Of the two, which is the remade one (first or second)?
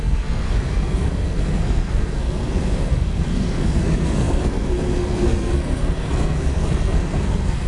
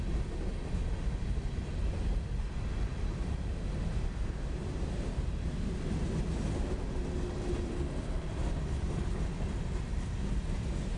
first